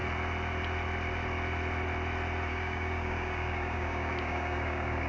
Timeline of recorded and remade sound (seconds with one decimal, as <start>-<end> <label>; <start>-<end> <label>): 0.0-2.5 recorded; 2.5-5.1 remade